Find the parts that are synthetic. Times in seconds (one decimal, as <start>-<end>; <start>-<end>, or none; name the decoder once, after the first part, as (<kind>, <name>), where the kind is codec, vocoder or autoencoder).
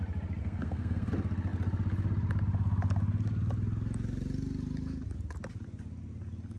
0.4-1.1 (codec, SNAC)